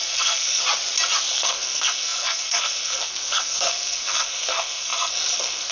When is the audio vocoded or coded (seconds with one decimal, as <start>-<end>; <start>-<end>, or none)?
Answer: 0.0-0.6; 1.3-5.7